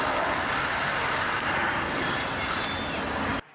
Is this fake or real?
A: real